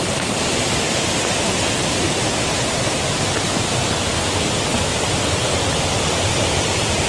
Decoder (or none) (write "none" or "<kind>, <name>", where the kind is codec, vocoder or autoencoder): none